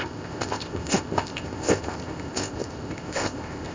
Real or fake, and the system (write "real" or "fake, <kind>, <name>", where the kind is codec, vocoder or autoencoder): fake, codec, ZipCodec